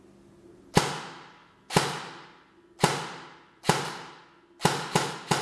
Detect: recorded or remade recorded